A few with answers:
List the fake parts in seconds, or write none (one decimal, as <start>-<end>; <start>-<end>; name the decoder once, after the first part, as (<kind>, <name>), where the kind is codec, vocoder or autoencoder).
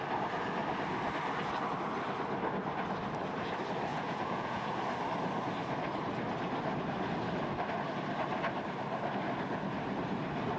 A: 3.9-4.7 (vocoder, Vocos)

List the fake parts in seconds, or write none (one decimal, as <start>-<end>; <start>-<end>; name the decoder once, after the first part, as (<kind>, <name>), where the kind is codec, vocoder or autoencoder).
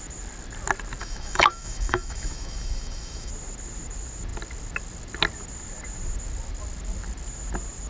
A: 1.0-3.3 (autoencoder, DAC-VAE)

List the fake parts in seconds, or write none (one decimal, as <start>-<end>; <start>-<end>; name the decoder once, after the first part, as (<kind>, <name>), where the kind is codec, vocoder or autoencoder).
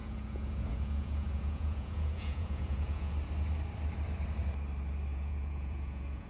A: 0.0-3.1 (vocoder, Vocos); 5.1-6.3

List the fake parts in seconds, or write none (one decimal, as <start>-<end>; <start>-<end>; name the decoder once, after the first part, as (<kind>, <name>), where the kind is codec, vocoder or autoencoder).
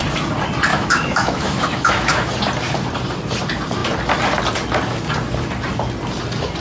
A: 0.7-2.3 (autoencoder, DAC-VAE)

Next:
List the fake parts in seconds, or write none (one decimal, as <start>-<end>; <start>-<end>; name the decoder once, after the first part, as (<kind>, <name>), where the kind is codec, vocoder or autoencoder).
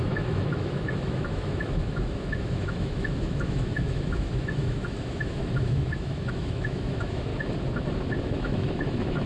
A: 0.0-7.3 (autoencoder, DAC-VAE); 8.2-9.3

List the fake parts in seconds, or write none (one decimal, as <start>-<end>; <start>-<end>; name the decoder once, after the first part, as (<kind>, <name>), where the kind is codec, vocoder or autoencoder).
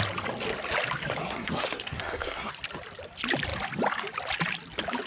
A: 1.2-2.5 (codec, SNAC)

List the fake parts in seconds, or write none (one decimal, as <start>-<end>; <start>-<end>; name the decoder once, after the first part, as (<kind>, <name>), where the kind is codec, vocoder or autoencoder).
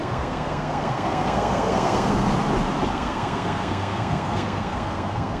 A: 0.0-2.3 (codec, SNAC); 2.9-5.4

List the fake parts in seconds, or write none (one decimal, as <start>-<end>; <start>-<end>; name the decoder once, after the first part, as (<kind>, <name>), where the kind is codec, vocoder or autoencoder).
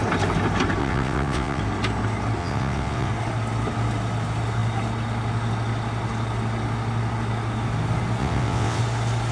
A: 0.8-1.6 (vocoder, WaveNeXt); 2.4-3.1; 8.2-8.8